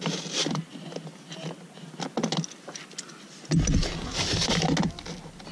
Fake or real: real